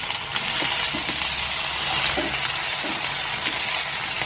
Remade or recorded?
recorded